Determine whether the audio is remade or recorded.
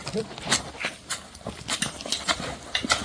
recorded